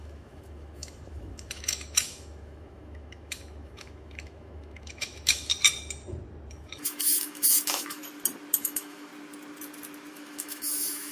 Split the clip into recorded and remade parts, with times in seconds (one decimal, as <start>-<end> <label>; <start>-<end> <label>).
0.0-5.5 remade; 5.5-6.5 recorded; 6.5-8.0 remade; 8.0-8.6 recorded; 8.6-9.1 remade; 9.1-10.1 recorded; 10.1-11.1 remade